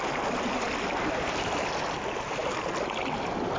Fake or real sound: real